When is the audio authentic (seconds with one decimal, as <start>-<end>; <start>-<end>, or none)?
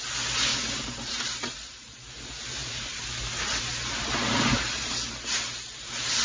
0.0-0.5; 1.9-2.6; 5.1-6.2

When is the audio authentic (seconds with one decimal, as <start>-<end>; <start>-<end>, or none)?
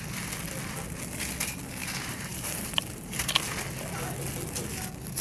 0.0-1.8; 3.3-5.2